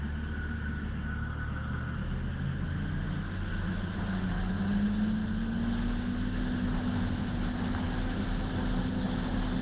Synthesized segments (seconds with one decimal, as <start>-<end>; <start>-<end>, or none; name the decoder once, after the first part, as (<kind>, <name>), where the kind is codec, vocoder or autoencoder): none